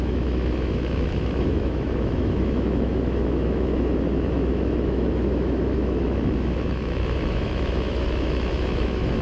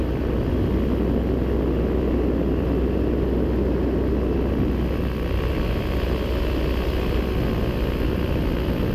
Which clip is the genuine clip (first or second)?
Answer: second